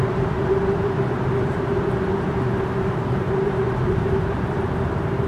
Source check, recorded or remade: remade